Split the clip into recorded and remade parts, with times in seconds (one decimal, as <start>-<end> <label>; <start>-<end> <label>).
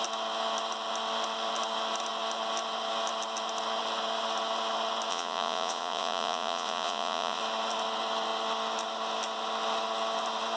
0.0-5.1 recorded; 5.1-7.4 remade; 7.4-10.6 recorded